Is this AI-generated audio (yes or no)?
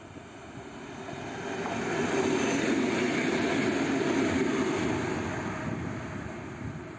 no